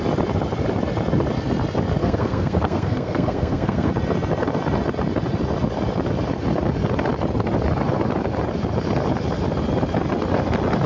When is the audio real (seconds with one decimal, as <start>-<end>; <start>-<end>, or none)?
0.0-2.0; 3.9-10.9